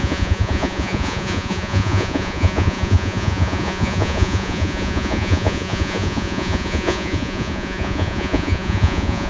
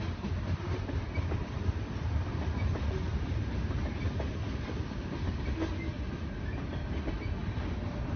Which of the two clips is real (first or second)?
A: second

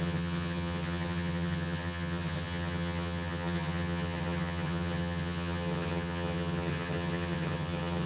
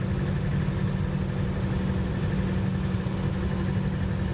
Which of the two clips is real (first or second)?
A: second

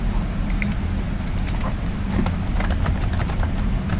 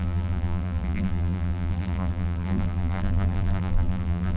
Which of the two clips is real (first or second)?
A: first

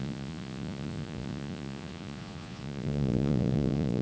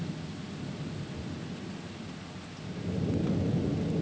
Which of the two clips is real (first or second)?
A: second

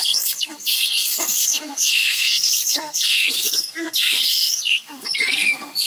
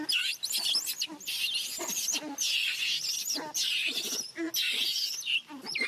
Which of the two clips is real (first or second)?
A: second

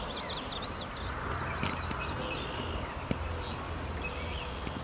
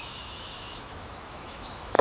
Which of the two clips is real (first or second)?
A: first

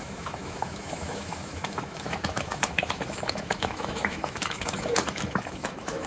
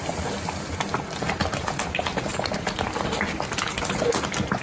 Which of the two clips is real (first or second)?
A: second